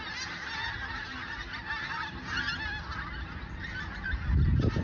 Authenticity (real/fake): real